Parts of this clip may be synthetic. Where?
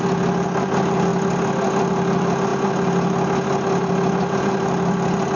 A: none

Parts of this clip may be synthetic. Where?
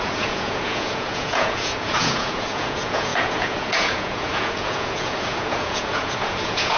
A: 0.0-6.8 (vocoder, Vocos)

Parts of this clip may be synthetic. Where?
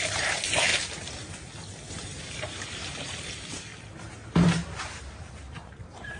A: 0.0-0.7 (vocoder, BigVGAN v2); 1.9-3.7; 4.8-6.2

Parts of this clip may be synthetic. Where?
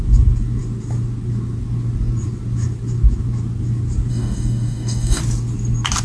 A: 4.1-5.2 (codec, DAC)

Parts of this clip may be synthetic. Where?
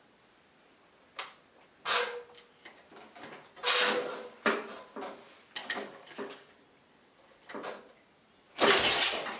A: 5.6-6.5 (codec, DAC)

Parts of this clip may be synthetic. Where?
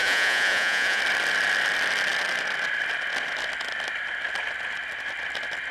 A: 0.0-1.0 (vocoder, Vocos)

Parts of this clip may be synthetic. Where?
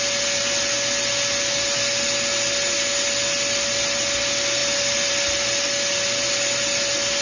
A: none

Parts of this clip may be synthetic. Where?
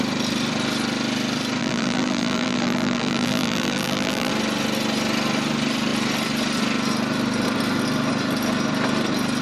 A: 1.6-4.3 (vocoder, BigVGAN v2)